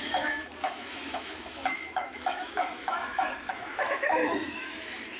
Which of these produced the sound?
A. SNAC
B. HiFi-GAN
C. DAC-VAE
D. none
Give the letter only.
C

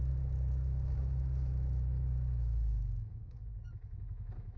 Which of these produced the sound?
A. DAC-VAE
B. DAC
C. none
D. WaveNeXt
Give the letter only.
A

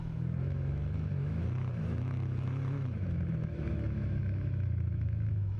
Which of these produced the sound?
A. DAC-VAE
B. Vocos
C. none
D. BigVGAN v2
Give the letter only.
A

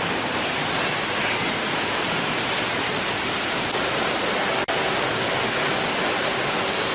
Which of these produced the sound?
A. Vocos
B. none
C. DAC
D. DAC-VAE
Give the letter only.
B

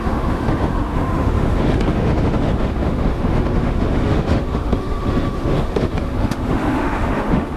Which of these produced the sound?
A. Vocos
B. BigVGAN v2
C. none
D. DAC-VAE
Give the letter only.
D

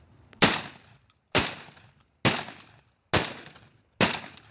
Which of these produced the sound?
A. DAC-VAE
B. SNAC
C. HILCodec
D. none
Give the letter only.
D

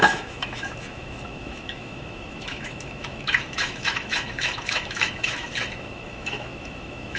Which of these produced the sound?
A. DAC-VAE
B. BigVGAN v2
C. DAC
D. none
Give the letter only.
A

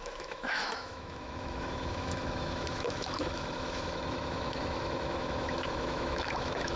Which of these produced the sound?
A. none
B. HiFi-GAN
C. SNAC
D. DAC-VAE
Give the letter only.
D